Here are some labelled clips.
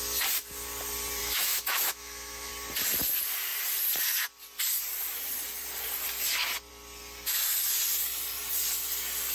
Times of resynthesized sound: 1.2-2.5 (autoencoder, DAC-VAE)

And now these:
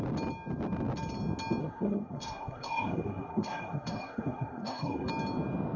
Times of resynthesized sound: 1.6-5.1 (codec, SNAC)

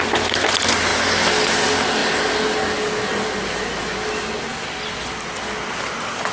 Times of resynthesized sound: none

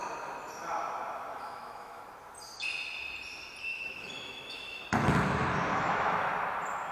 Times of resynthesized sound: 1.3-2.0 (autoencoder, DAC-VAE); 3.7-4.8; 5.7-6.3